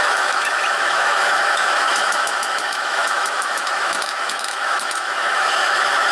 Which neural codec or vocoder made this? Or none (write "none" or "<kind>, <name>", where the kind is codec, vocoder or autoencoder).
autoencoder, DAC-VAE